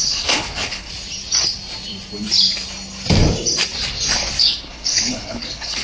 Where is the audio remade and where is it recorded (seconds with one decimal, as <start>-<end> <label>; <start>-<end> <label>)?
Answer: 0.0-0.9 remade; 0.9-4.4 recorded; 4.4-5.8 remade